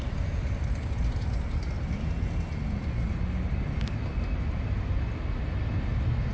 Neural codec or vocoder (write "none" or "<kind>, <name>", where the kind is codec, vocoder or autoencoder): none